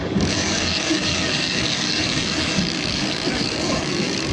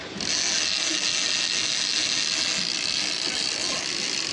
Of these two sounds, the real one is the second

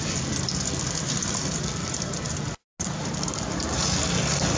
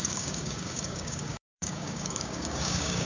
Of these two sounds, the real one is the first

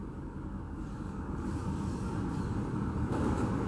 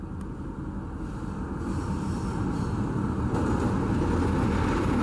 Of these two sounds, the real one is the second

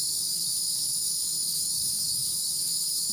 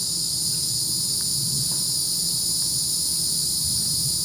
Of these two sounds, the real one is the second